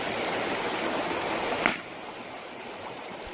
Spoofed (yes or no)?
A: no